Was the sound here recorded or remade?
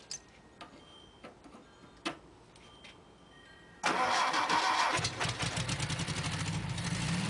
recorded